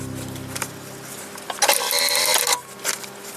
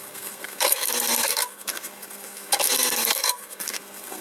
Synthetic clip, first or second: second